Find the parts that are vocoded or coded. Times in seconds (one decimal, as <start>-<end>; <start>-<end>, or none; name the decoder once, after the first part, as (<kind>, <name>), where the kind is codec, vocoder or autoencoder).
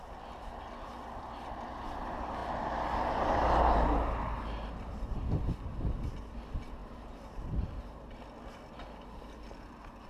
6.8-8.1 (vocoder, BigVGAN v2)